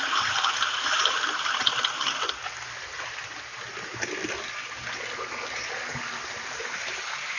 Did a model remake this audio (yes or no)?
no